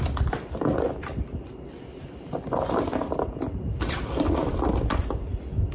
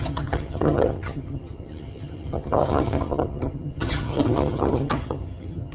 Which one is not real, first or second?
second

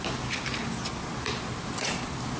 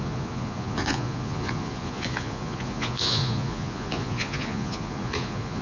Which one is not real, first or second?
second